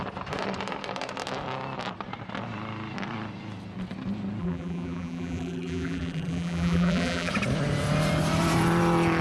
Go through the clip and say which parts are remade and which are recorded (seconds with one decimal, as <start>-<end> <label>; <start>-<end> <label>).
0.0-4.4 recorded; 4.4-7.3 remade; 7.3-9.2 recorded